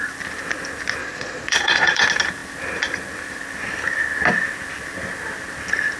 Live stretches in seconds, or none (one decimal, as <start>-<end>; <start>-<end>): 0.0-1.0; 2.0-6.0

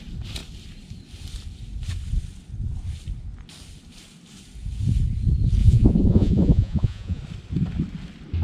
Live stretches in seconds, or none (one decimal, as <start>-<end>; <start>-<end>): 0.0-5.6; 7.2-8.4

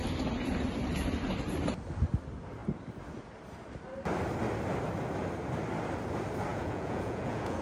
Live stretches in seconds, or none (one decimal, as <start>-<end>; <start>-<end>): 0.0-6.5